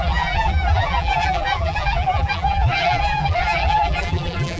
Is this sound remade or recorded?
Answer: remade